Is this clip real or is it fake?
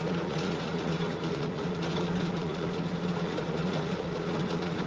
fake